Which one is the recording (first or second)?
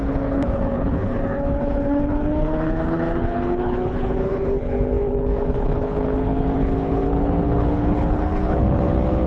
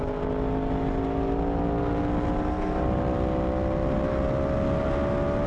second